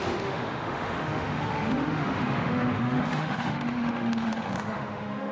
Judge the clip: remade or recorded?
remade